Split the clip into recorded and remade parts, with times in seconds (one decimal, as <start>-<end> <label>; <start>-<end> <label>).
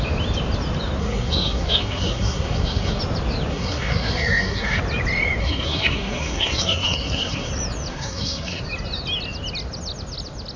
0.0-1.0 recorded; 1.0-3.0 remade; 3.0-3.5 recorded; 3.5-4.8 remade; 4.8-5.4 recorded; 5.4-7.5 remade; 7.5-7.9 recorded; 7.9-8.6 remade; 8.6-10.6 recorded